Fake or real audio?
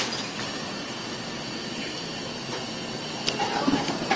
real